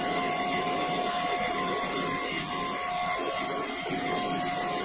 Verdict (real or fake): real